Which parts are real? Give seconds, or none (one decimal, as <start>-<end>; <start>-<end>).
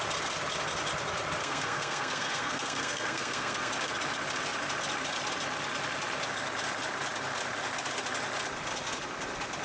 0.0-1.4; 3.7-9.6